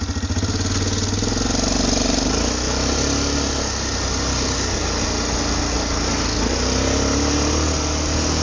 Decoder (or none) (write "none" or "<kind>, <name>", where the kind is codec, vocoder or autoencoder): none